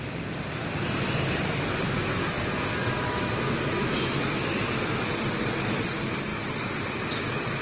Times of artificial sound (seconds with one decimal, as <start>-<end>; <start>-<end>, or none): 2.7-5.1